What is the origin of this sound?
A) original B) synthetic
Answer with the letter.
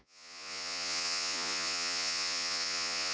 B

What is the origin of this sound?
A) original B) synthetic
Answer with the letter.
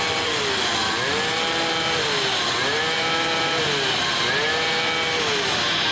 A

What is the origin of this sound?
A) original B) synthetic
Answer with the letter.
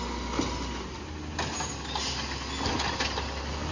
A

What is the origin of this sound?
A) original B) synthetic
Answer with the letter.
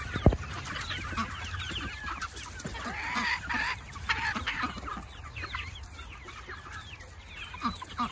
A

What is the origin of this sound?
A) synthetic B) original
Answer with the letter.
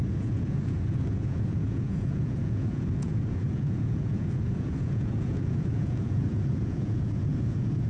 A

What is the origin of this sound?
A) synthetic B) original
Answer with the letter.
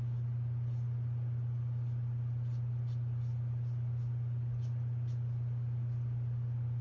B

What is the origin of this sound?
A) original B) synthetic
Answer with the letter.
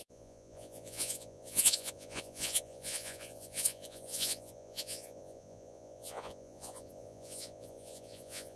B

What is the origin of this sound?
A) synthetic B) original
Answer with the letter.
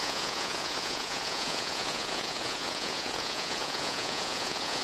A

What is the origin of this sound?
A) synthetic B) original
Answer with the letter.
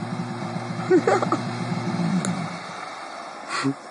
B